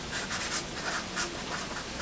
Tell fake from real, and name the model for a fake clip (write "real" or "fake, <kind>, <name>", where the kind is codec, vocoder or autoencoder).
real